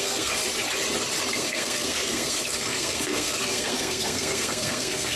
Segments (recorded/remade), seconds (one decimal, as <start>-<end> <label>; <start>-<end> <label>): 0.0-0.4 remade; 0.4-1.3 recorded; 1.3-5.2 remade

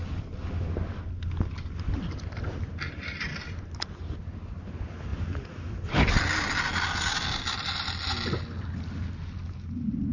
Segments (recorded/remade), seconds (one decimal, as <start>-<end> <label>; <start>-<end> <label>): 0.0-10.1 recorded

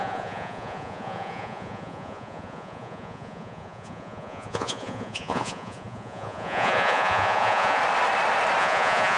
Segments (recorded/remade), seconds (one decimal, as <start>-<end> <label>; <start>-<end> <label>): 0.0-7.8 remade; 7.8-8.6 recorded; 8.6-9.2 remade

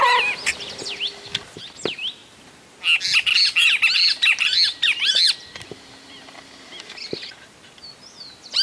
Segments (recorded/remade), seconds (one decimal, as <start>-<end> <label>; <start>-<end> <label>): 0.0-8.6 recorded